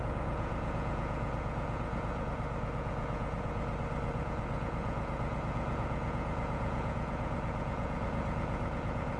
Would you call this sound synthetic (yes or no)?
yes